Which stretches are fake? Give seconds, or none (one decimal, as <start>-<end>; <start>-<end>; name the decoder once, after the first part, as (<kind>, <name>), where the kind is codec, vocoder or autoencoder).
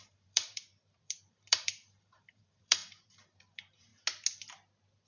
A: 0.0-3.9 (vocoder, BigVGAN v2)